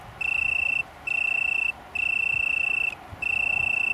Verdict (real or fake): real